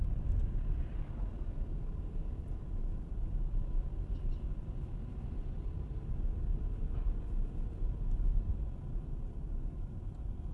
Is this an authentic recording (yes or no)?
yes